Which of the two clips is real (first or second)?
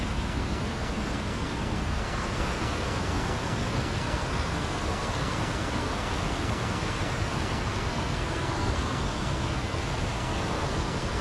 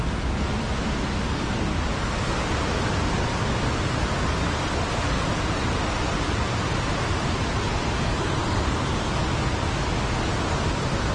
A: second